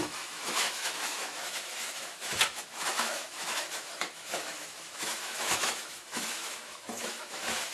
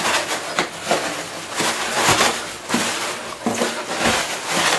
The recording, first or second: second